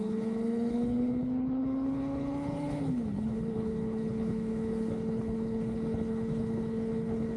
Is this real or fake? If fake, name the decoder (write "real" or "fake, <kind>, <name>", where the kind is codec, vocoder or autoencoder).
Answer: fake, codec, HILCodec